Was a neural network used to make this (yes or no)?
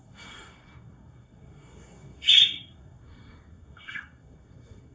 yes